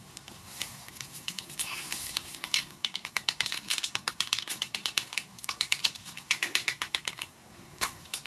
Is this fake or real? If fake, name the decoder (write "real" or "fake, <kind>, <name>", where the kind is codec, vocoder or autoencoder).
fake, codec, SNAC